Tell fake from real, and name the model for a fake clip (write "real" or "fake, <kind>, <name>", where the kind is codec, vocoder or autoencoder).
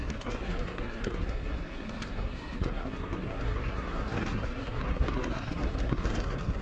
fake, codec, SNAC